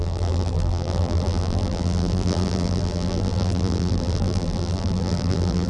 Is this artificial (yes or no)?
yes